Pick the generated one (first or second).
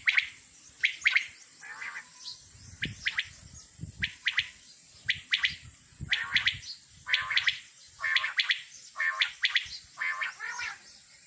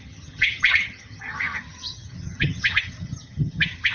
second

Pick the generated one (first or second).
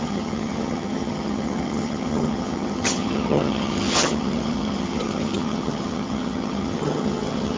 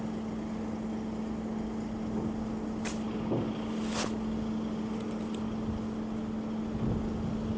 first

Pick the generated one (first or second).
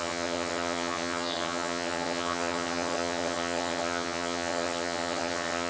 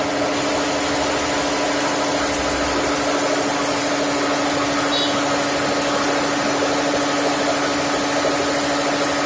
first